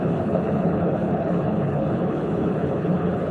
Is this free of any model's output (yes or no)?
no